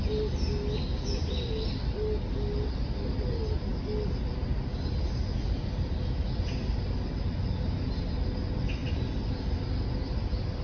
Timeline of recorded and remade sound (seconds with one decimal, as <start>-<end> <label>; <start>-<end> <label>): 0.0-10.6 recorded